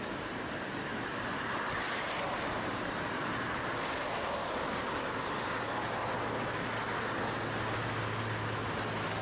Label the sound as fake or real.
real